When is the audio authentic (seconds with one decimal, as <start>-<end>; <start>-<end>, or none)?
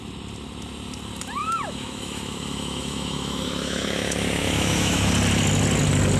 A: 0.0-1.4; 5.1-6.2